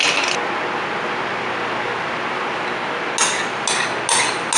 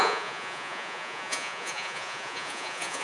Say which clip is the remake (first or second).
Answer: second